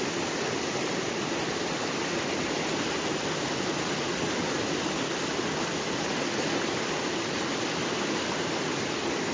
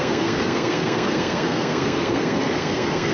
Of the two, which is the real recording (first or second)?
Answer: first